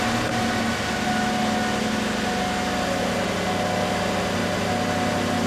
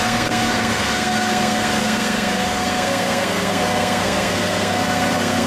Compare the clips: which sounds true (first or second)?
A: first